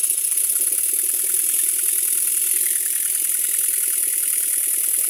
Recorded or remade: remade